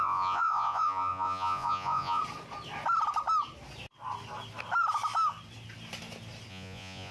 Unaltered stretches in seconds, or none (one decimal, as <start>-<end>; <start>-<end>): 2.2-6.5